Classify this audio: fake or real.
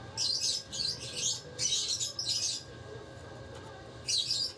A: real